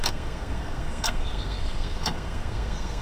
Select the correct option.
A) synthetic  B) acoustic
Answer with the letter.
A